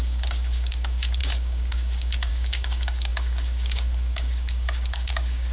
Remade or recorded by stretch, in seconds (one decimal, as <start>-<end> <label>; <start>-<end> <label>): 0.0-5.5 remade